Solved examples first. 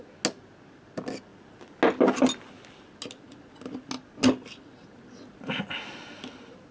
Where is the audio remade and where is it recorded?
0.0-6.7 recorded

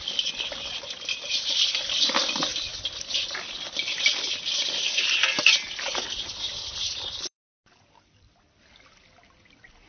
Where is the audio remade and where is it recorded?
0.0-6.5 recorded; 6.5-8.3 remade; 8.3-9.9 recorded